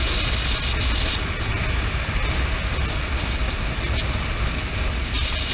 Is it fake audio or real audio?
real